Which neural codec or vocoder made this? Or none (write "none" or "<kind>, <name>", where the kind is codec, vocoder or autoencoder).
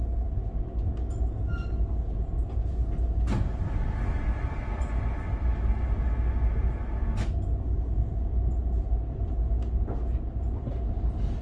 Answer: none